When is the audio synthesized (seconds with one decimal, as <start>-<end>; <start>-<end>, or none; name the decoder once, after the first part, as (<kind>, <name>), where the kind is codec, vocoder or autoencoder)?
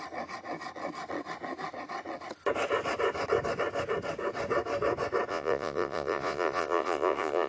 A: 5.3-7.5 (vocoder, Vocos)